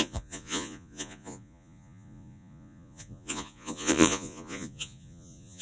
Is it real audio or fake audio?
fake